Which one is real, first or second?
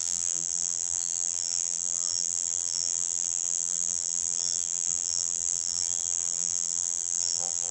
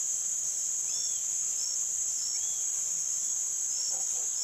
second